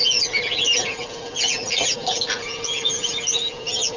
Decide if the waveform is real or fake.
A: real